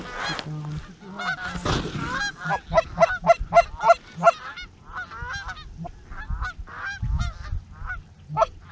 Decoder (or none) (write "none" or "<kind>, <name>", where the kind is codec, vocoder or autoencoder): none